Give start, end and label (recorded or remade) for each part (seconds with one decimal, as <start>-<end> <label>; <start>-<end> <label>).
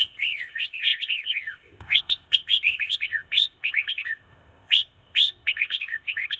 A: 0.0-6.4 remade